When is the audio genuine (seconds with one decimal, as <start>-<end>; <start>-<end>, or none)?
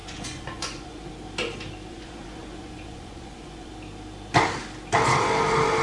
1.1-1.9; 3.7-5.8